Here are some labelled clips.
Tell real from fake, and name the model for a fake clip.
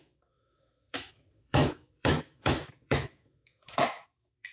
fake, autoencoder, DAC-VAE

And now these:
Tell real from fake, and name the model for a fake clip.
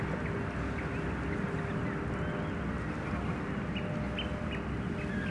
real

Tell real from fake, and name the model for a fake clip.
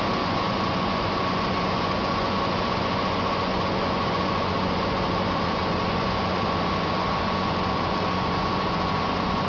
fake, vocoder, Vocos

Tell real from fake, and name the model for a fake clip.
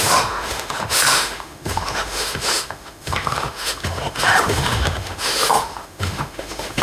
fake, autoencoder, DAC-VAE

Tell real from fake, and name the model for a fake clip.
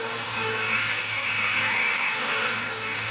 fake, codec, DAC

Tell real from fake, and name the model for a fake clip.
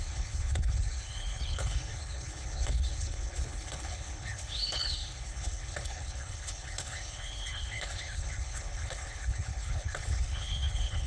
fake, codec, HILCodec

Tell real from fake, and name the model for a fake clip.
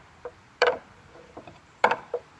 fake, vocoder, BigVGAN v2